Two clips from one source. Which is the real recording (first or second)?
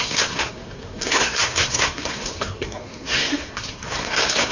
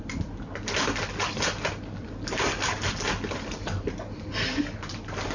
second